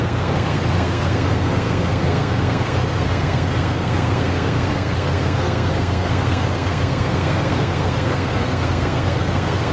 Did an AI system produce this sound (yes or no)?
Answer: yes